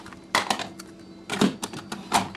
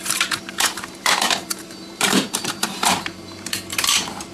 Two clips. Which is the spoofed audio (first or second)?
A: second